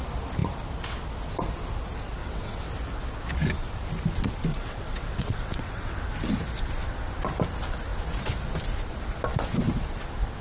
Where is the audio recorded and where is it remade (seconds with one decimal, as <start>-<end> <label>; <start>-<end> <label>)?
0.0-2.2 recorded; 2.2-2.7 remade; 2.7-4.5 recorded; 4.5-6.0 remade; 6.0-10.4 recorded

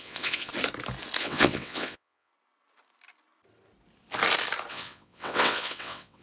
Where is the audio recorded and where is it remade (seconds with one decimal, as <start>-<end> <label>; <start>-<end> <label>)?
0.0-0.5 remade; 0.5-1.2 recorded; 1.2-2.3 remade; 2.3-4.7 recorded; 4.7-6.2 remade

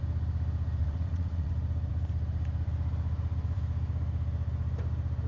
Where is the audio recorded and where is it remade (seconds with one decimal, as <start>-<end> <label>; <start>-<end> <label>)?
0.0-0.8 recorded; 0.8-1.5 remade; 1.5-5.3 recorded

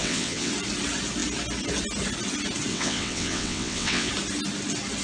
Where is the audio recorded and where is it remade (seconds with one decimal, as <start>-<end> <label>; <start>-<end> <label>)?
0.0-0.5 remade; 0.5-2.7 recorded; 2.7-4.1 remade; 4.1-5.0 recorded